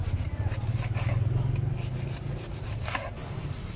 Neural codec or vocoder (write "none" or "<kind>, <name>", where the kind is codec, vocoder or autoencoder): none